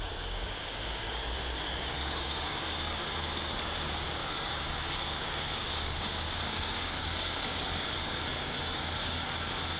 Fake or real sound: fake